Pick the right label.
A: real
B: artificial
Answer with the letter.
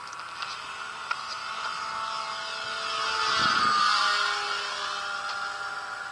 A